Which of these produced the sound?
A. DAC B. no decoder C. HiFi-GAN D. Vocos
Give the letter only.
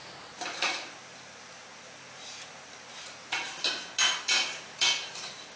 B